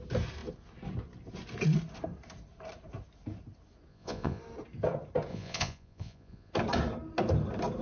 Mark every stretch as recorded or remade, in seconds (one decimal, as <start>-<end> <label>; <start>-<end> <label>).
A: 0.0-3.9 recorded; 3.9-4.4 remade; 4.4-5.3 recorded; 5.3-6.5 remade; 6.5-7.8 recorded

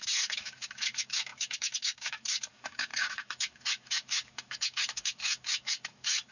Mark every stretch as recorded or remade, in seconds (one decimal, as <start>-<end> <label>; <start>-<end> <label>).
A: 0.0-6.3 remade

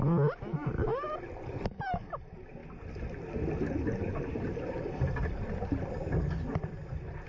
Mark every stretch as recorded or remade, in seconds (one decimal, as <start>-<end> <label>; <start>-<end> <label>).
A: 0.0-7.3 recorded